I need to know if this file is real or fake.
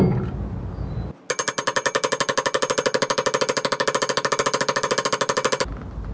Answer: real